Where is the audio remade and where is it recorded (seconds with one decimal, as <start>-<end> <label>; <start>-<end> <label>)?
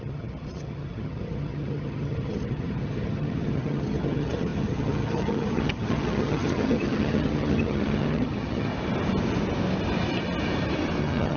0.0-8.7 remade; 8.7-11.0 recorded; 11.0-11.4 remade